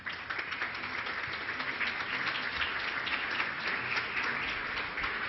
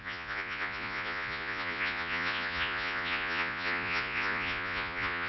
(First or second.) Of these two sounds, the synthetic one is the second